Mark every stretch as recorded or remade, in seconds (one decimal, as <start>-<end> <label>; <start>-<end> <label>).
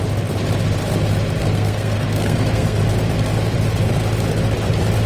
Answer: 0.0-1.4 recorded; 1.4-2.8 remade; 2.8-5.1 recorded